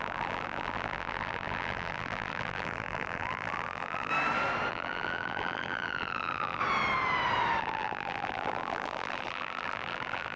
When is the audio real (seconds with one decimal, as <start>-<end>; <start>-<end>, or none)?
4.1-4.7; 6.6-7.6